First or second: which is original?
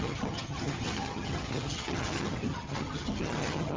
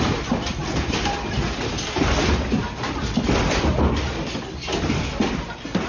second